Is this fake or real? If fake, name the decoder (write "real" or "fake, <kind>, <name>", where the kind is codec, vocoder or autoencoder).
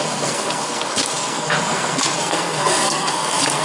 fake, codec, SNAC